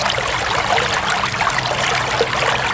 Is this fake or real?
real